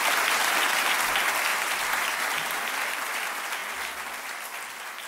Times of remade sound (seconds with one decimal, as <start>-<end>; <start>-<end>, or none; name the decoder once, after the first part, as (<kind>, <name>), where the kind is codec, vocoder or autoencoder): 1.5-2.7 (vocoder, BigVGAN v2)